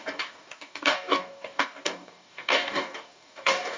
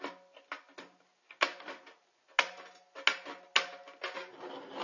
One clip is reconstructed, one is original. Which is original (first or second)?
second